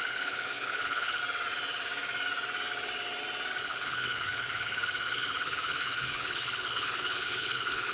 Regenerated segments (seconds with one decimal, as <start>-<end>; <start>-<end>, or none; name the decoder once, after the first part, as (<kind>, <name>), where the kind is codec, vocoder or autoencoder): 0.0-1.2 (codec, HILCodec); 3.6-7.9